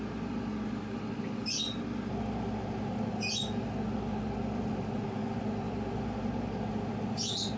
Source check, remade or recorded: recorded